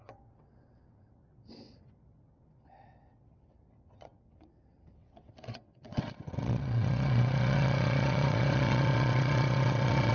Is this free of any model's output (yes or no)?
no